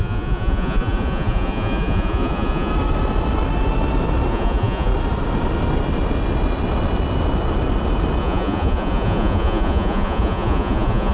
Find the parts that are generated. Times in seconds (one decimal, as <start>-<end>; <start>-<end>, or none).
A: 0.0-2.7; 4.3-4.9; 8.2-11.1